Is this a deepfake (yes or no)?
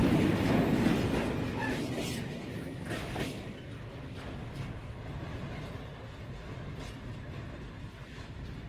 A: no